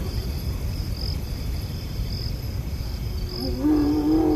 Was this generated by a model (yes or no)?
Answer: no